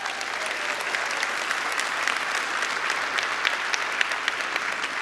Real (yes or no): yes